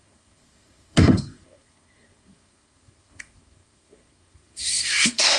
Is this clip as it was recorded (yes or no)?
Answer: no